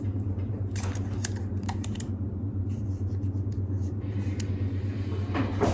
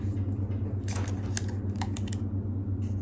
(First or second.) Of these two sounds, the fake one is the first